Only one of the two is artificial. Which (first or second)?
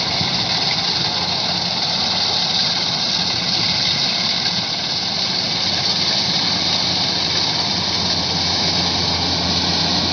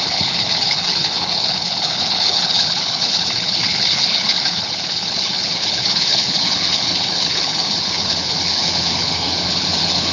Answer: second